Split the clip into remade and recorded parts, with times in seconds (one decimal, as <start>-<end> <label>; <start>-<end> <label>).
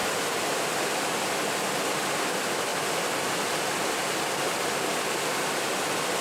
0.0-6.2 recorded